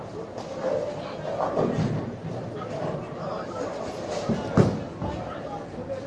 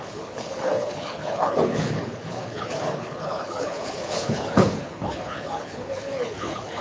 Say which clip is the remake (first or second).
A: second